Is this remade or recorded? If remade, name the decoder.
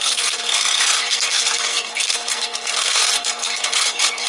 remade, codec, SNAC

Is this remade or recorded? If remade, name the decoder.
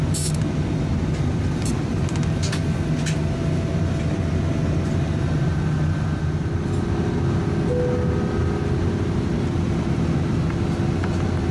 recorded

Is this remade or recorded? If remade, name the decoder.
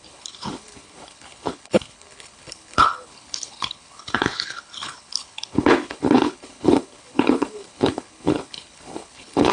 remade, codec, HILCodec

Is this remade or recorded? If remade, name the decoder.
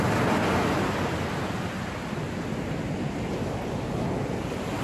recorded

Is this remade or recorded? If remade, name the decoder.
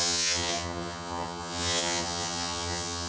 remade, vocoder, HiFi-GAN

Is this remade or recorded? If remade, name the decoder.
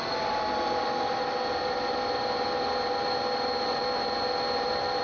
recorded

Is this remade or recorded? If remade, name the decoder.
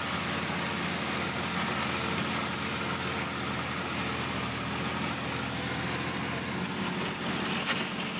recorded